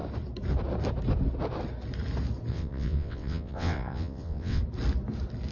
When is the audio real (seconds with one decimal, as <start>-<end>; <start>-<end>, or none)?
0.0-2.5; 4.6-5.5